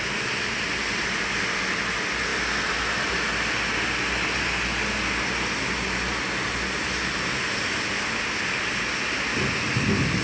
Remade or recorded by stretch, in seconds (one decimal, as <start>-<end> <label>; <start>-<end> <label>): 0.0-10.2 recorded